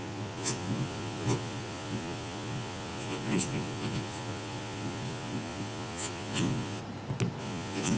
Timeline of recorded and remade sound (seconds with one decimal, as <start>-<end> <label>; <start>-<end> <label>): 0.0-6.8 remade; 6.8-7.4 recorded; 7.4-8.0 remade

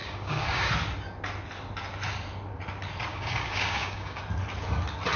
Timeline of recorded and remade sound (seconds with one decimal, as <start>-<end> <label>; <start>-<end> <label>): 0.0-0.7 remade; 0.7-3.1 recorded; 3.1-4.2 remade; 4.2-5.2 recorded

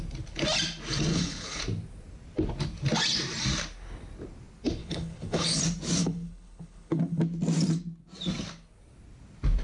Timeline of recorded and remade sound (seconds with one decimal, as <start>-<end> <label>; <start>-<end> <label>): 0.0-1.1 recorded; 1.1-1.6 remade; 1.6-4.8 recorded; 4.8-5.6 remade; 5.6-6.0 recorded; 6.0-7.2 remade; 7.2-9.6 recorded